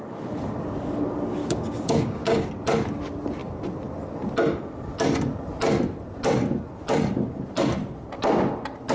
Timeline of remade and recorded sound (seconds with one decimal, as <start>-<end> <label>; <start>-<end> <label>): 0.0-1.4 recorded; 1.4-2.5 remade; 2.5-8.9 recorded